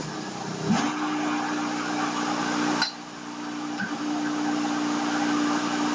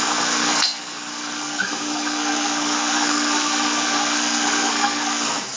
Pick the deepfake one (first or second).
second